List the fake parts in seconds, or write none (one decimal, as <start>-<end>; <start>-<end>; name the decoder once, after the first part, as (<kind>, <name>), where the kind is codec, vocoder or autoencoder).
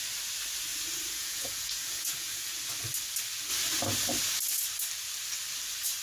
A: 0.7-2.5 (vocoder, Vocos)